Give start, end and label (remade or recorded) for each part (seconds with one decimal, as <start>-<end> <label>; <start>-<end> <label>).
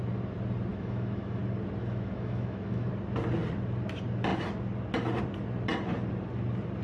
0.0-0.7 recorded; 0.7-1.4 remade; 1.4-1.8 recorded; 1.8-2.9 remade; 2.9-6.8 recorded